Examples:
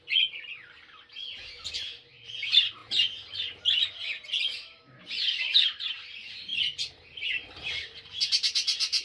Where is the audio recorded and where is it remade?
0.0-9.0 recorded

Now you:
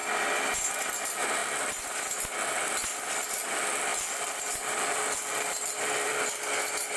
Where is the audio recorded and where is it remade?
0.0-3.9 recorded; 3.9-6.3 remade; 6.3-7.0 recorded

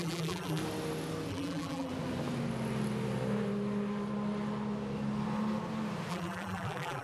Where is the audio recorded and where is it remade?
0.0-0.6 remade; 0.6-1.3 recorded; 1.3-1.9 remade; 1.9-6.1 recorded; 6.1-7.0 remade

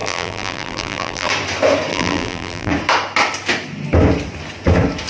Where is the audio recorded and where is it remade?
0.0-1.3 remade; 1.3-1.9 recorded; 1.9-2.7 remade; 2.7-5.1 recorded

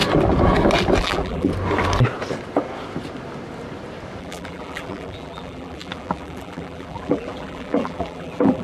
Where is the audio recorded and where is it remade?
0.0-1.0 recorded; 1.0-1.5 remade; 1.5-4.2 recorded; 4.2-8.6 remade